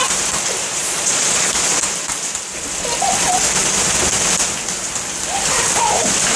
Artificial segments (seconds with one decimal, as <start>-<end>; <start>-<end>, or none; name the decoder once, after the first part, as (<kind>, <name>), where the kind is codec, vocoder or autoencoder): 0.8-1.5 (vocoder, Vocos)